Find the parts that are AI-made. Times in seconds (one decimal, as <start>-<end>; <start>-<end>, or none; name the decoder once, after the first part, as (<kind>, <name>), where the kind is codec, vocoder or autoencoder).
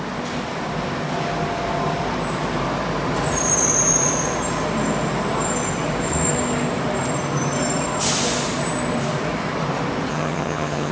10.1-10.9 (vocoder, HiFi-GAN)